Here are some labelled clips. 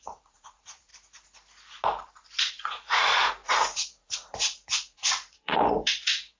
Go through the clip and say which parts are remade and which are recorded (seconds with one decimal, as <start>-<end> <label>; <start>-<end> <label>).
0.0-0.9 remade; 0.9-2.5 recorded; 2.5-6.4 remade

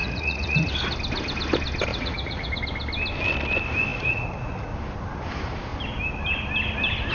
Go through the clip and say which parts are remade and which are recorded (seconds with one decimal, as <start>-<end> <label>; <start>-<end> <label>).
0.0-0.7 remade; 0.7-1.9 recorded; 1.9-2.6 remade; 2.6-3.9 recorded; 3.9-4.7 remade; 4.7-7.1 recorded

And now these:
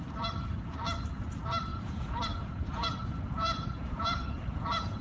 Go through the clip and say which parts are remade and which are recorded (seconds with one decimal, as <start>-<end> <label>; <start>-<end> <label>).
0.0-1.7 recorded; 1.7-5.0 remade

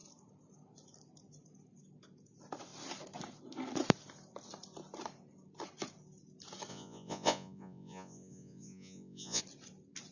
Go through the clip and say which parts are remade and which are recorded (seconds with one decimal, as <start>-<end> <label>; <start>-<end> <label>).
0.0-6.7 recorded; 6.7-9.4 remade; 9.4-10.1 recorded

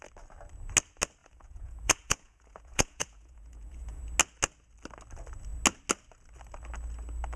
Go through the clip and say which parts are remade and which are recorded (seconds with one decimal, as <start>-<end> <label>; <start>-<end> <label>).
0.0-1.2 recorded; 1.2-4.0 remade; 4.0-7.4 recorded

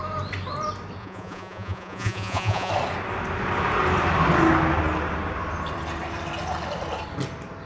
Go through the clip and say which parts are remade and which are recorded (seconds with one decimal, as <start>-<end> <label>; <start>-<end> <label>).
0.0-1.0 recorded; 1.0-2.7 remade; 2.7-7.7 recorded

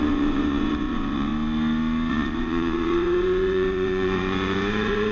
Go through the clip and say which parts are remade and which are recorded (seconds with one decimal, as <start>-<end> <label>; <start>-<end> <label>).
0.0-1.3 remade; 1.3-2.1 recorded; 2.1-5.1 remade